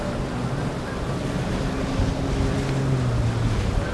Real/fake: real